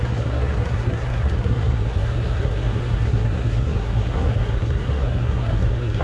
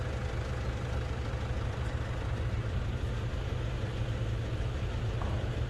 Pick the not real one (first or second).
first